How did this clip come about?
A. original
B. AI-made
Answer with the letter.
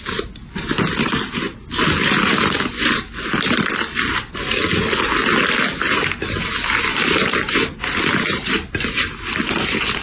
A